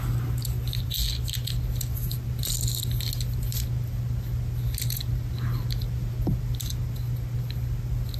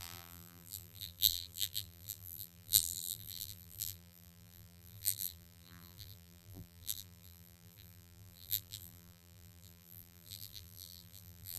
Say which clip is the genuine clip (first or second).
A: first